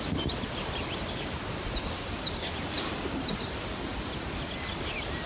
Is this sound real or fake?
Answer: real